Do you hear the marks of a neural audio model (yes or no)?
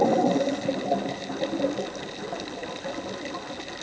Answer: no